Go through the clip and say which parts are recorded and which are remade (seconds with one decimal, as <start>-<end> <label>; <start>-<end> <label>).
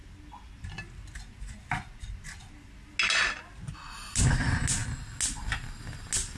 0.0-6.4 recorded